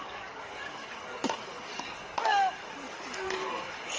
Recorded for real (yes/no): no